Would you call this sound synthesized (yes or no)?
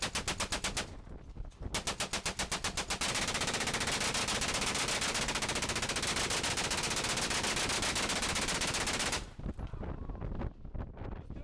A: no